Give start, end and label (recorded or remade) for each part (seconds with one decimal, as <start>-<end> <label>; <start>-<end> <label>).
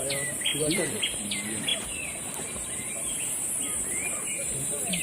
0.0-0.5 recorded; 0.5-1.0 remade; 1.0-5.0 recorded